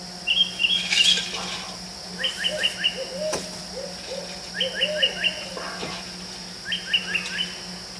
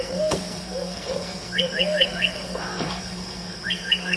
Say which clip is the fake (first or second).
second